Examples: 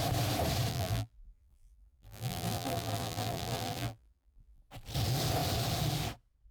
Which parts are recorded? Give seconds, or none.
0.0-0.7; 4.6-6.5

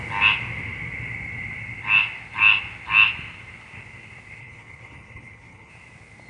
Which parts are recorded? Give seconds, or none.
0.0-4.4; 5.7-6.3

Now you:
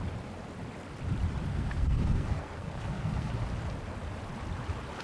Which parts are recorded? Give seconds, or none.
0.0-1.5; 3.3-5.0